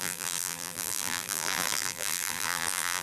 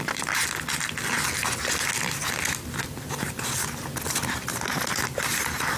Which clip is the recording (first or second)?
second